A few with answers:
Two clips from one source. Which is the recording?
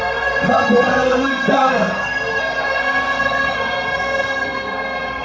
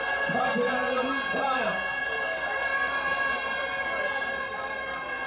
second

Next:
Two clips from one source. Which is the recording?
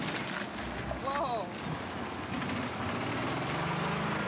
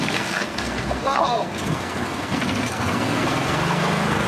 first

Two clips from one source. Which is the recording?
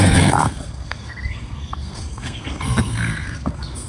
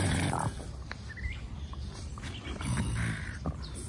second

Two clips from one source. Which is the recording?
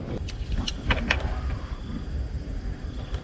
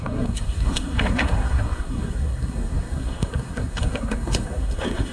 first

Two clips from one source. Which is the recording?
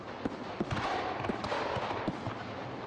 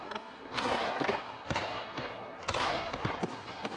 first